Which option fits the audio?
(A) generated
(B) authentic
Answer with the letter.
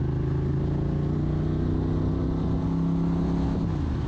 B